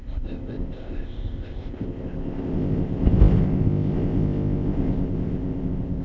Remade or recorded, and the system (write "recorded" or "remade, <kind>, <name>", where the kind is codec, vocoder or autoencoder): remade, codec, ZipCodec